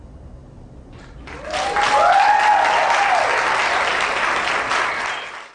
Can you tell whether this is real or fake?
real